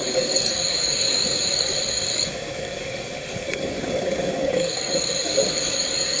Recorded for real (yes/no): no